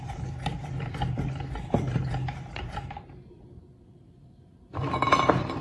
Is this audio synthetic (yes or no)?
yes